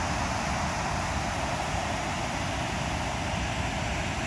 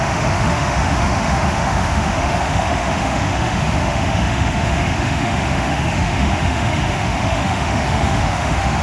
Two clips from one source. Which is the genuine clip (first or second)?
first